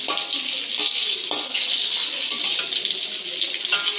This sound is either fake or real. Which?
real